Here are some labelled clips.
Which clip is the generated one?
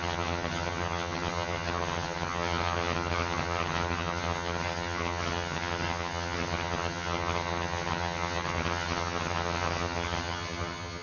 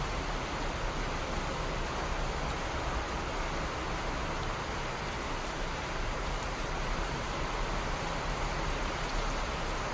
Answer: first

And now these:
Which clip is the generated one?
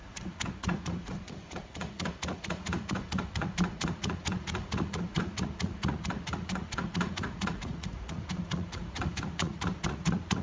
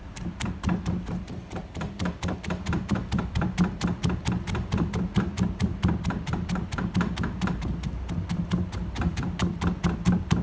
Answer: first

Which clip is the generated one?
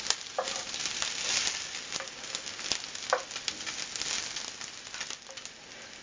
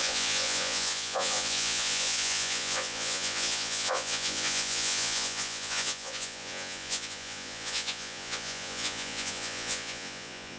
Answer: second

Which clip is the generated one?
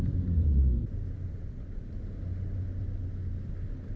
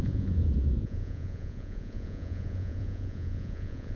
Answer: second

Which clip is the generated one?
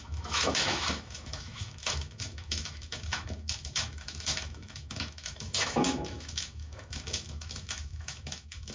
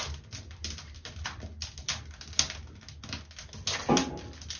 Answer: first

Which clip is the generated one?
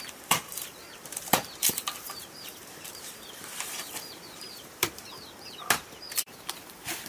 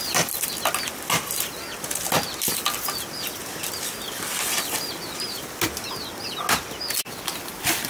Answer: first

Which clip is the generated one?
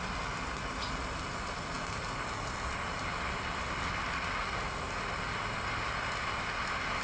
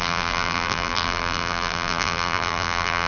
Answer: second